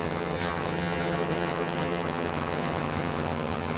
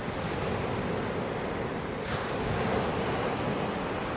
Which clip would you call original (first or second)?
second